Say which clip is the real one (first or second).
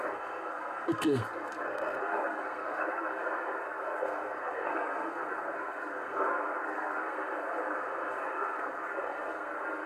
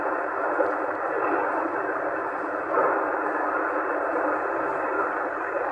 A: second